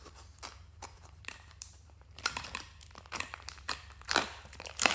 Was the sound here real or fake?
fake